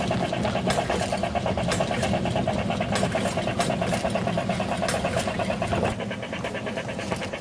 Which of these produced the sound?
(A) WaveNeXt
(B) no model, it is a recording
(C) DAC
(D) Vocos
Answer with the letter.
B